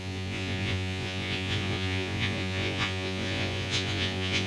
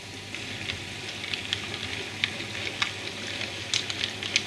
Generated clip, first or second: first